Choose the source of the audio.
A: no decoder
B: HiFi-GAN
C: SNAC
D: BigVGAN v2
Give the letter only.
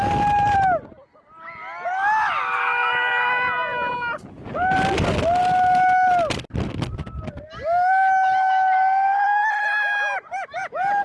A